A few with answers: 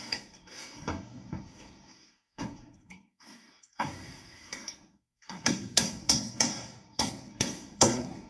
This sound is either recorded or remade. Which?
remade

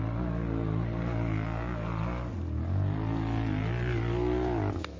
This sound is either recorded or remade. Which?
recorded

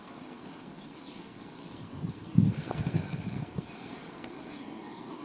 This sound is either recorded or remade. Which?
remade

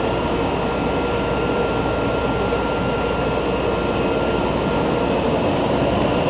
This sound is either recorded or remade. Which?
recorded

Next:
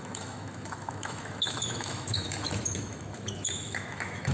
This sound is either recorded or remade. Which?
remade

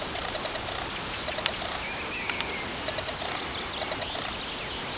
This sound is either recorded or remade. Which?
recorded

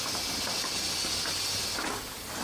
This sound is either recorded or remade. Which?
recorded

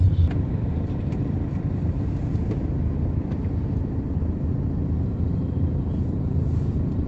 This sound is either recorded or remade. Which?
recorded